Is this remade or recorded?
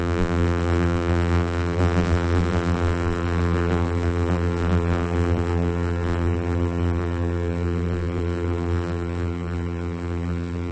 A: remade